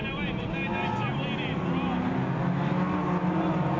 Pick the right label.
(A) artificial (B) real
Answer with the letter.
B